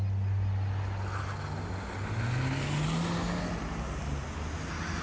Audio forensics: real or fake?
real